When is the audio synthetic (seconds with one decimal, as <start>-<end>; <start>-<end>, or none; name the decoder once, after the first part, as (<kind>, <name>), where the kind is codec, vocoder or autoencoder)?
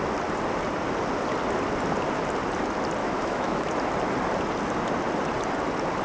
3.0-3.7 (autoencoder, DAC-VAE)